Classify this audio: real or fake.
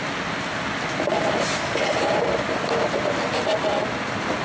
real